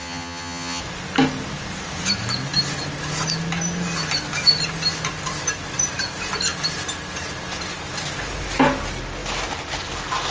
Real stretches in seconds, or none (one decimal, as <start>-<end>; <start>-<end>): 0.8-10.3